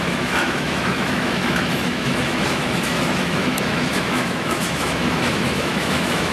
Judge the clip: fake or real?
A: fake